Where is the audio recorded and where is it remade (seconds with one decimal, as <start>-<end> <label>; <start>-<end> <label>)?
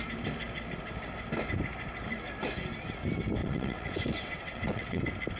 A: 0.0-3.4 recorded; 3.4-5.0 remade; 5.0-5.4 recorded